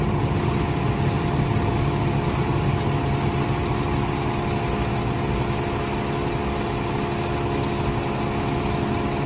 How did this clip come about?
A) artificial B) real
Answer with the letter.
B